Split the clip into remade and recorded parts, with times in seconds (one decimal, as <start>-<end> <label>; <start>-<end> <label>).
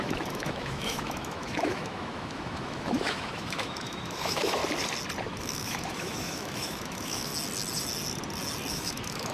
0.0-4.6 remade; 4.6-5.4 recorded; 5.4-7.3 remade; 7.3-8.7 recorded; 8.7-9.3 remade